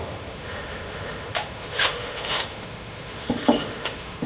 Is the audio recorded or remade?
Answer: remade